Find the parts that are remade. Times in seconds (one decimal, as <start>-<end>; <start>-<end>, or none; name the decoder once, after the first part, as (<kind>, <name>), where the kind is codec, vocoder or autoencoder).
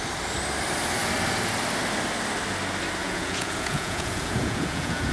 3.0-5.1 (vocoder, Vocos)